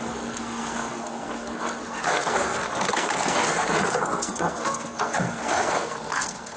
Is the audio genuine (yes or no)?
no